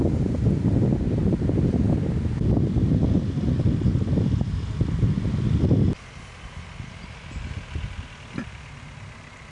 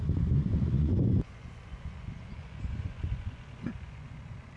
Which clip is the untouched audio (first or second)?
first